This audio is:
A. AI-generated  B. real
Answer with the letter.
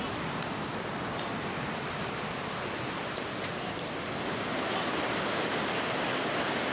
B